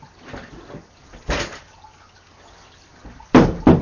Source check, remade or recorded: recorded